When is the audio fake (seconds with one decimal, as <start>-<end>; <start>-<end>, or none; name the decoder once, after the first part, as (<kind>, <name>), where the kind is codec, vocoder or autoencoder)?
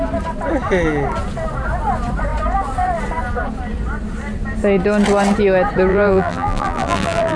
5.9-7.4 (vocoder, BigVGAN v2)